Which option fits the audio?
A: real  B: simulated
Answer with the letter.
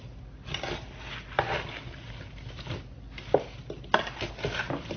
A